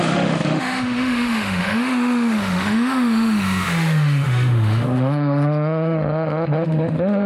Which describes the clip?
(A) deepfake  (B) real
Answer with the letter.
A